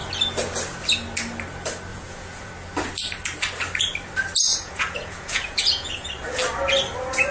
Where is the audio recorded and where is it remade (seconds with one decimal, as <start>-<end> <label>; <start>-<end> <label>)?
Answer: 0.0-1.9 recorded; 1.9-2.5 remade; 2.5-4.5 recorded; 4.5-6.1 remade; 6.1-7.3 recorded